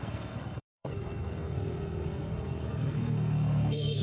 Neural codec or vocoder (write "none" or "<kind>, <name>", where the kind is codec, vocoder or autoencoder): codec, SNAC